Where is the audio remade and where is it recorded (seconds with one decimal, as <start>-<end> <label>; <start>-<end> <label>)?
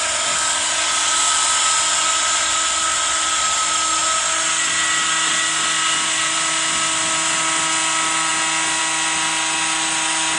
0.0-10.4 recorded